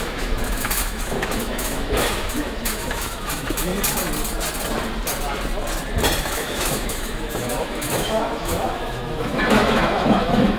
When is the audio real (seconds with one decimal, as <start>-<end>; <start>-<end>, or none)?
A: 3.7-6.2